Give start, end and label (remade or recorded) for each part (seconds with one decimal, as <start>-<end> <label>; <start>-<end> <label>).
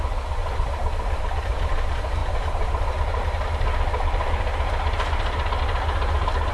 0.0-0.4 recorded; 0.4-1.2 remade; 1.2-6.5 recorded